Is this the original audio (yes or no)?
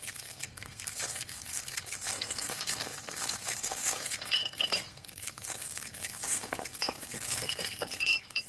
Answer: no